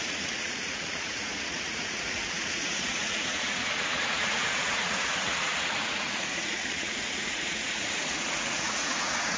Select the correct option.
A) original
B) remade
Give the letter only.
B